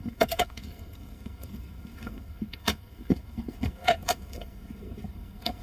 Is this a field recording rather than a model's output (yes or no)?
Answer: no